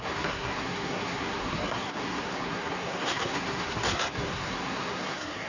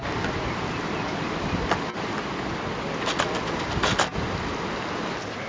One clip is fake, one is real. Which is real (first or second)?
second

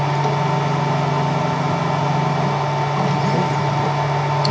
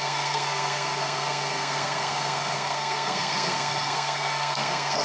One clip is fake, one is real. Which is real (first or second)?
first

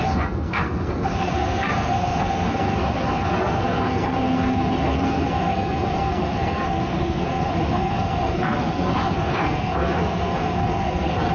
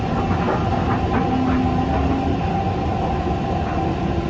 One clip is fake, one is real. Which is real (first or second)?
second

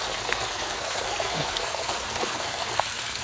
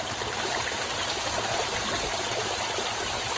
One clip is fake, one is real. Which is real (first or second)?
second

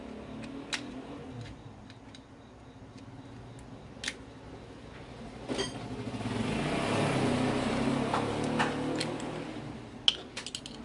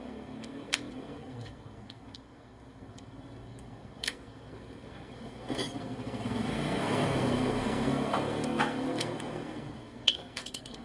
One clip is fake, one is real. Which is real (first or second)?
first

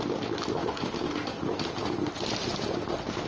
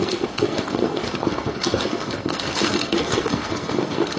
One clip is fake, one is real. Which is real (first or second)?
first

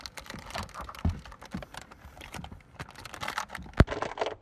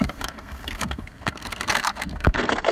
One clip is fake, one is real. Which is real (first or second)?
first